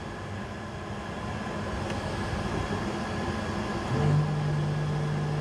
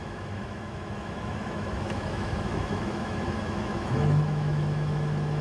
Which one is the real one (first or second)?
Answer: first